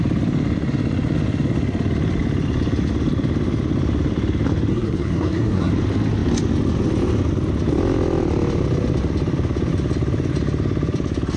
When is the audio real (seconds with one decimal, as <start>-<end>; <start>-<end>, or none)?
0.0-4.7; 5.7-11.4

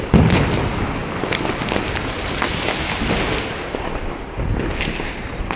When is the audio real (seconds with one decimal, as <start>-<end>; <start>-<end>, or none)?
0.0-5.6